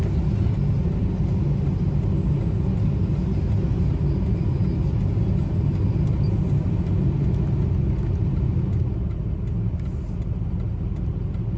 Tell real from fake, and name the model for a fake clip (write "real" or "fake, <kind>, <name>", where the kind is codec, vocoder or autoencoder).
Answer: real